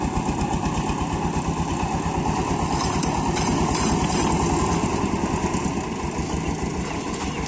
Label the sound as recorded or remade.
recorded